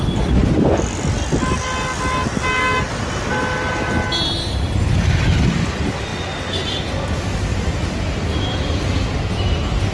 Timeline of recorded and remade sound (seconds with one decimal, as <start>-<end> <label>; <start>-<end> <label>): 0.0-9.9 recorded